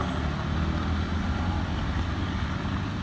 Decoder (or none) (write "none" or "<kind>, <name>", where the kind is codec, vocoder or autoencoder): none